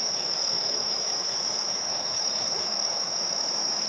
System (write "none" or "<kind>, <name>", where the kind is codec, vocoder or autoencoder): autoencoder, DAC-VAE